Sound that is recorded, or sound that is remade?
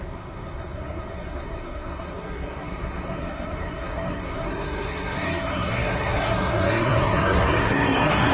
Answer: remade